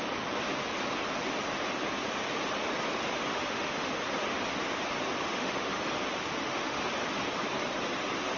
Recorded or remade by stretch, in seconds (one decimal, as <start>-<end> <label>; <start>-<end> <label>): 0.0-3.3 recorded; 3.3-3.9 remade; 3.9-5.2 recorded; 5.2-5.8 remade; 5.8-6.2 recorded; 6.2-6.8 remade; 6.8-8.4 recorded